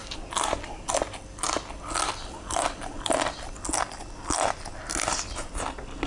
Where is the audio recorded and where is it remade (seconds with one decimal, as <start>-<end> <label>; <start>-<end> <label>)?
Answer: 0.0-6.1 recorded